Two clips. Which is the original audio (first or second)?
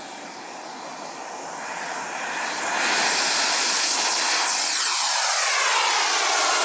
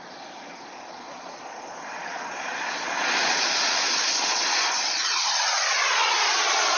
first